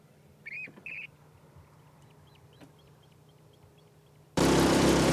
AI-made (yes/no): yes